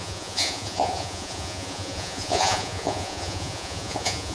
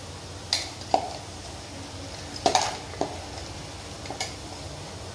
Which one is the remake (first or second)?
first